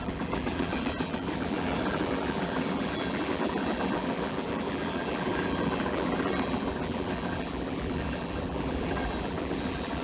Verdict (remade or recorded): remade